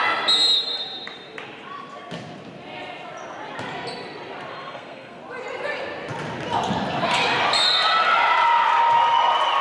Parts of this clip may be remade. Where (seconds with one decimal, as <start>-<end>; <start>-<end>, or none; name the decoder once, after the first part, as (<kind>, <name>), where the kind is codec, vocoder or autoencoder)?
4.5-5.2 (codec, SNAC)